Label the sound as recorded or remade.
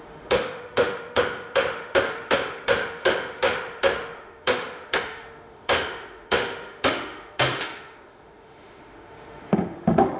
remade